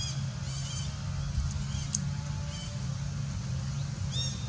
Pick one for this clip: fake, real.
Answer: real